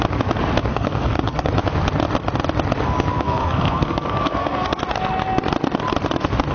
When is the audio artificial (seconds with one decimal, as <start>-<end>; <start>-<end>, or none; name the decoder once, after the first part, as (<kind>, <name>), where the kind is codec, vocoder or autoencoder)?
0.7-1.5 (codec, SNAC); 3.1-4.8